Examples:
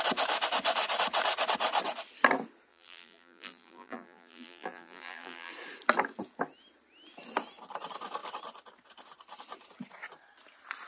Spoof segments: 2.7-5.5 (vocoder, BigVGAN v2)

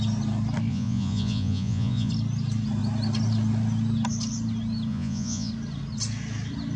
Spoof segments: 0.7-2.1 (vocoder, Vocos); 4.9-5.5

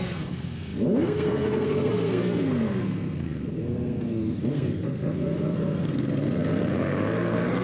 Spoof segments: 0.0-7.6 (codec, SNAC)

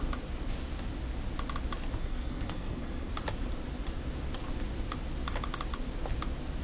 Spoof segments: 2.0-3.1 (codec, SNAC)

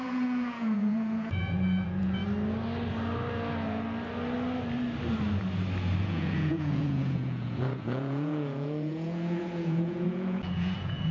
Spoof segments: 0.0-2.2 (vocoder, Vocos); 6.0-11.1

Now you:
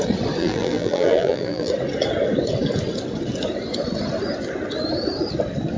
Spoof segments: 0.4-1.7 (vocoder, BigVGAN v2)

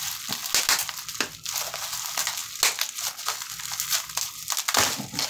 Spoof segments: none

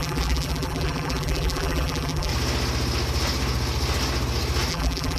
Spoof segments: 0.0-2.3 (vocoder, BigVGAN v2); 4.7-5.2